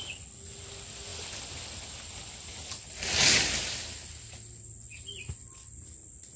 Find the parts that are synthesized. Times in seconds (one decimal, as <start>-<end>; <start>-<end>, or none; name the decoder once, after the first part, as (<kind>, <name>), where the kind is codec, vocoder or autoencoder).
none